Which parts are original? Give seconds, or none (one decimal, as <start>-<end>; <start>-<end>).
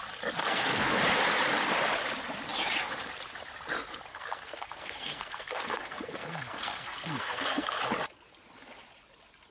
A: 0.0-0.4; 1.0-4.1; 7.8-9.5